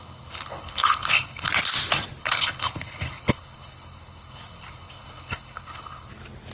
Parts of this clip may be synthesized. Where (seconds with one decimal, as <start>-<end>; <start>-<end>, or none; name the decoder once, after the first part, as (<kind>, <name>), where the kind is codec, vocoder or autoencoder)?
0.0-1.5 (codec, HILCodec); 2.2-6.1